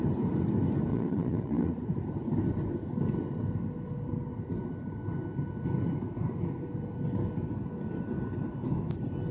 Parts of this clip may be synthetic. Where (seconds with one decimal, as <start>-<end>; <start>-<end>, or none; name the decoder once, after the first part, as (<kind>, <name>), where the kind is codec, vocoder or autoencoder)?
0.9-1.7 (vocoder, Vocos)